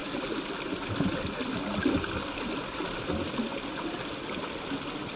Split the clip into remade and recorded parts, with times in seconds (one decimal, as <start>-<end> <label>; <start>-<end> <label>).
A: 0.0-5.2 recorded